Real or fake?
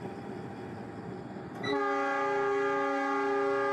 real